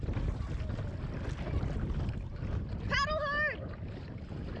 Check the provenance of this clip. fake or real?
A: real